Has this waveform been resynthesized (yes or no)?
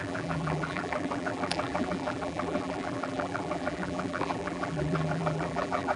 yes